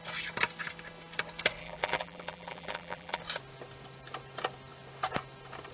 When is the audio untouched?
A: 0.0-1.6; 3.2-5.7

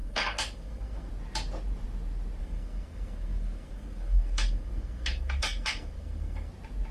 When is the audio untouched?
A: 1.1-2.4; 6.5-6.9